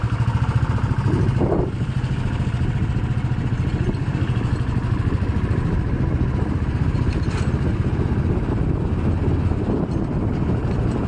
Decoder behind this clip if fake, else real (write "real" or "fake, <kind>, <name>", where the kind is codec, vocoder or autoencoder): real